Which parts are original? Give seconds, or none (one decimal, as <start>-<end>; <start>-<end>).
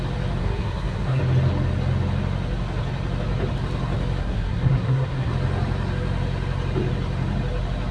0.0-0.4; 1.2-4.2; 5.3-7.9